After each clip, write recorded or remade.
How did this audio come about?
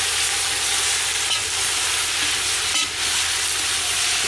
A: recorded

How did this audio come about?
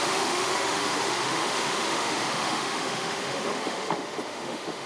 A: remade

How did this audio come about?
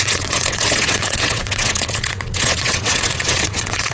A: remade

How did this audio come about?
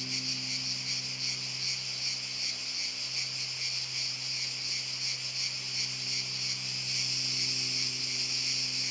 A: recorded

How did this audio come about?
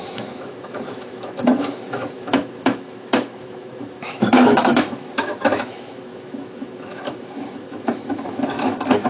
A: remade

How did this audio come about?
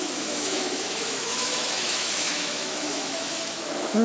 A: remade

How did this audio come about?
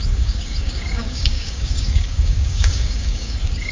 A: remade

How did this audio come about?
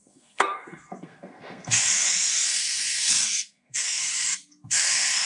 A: remade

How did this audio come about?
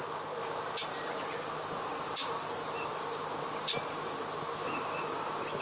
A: recorded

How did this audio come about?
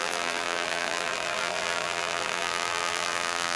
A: remade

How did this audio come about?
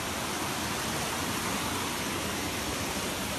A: recorded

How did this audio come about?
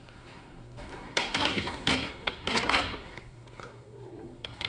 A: remade